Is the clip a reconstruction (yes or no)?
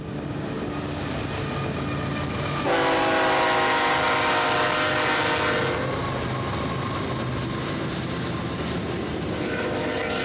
no